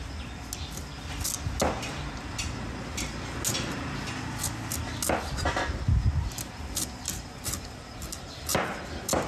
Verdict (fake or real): real